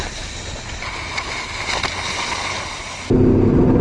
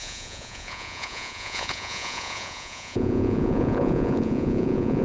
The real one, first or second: first